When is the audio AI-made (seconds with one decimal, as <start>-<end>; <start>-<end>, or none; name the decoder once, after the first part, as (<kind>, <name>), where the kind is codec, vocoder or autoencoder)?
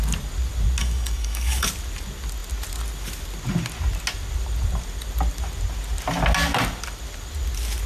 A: 0.8-1.7 (codec, DAC)